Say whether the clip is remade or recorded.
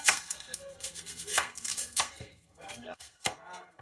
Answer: remade